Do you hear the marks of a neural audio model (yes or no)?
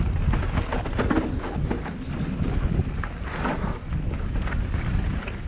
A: no